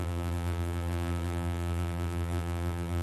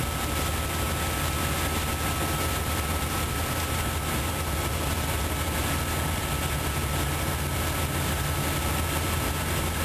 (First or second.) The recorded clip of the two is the second